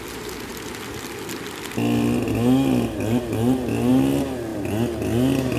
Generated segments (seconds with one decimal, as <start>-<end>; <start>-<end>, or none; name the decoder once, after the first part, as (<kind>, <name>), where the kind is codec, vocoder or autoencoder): none